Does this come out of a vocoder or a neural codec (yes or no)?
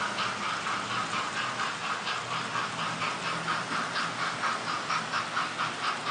no